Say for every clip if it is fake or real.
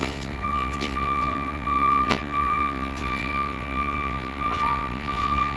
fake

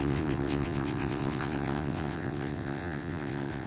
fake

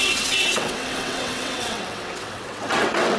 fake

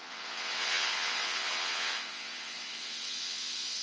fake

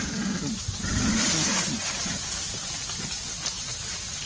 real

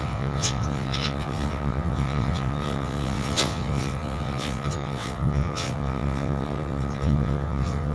fake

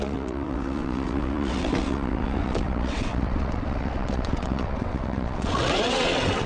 fake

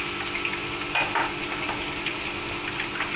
real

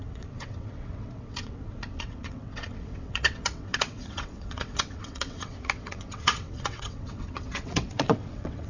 fake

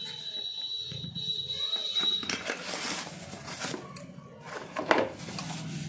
real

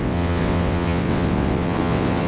fake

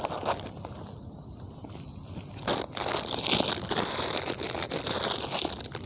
real